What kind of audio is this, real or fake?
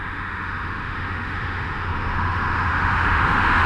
fake